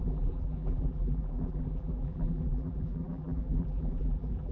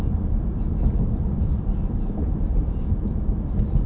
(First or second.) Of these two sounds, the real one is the second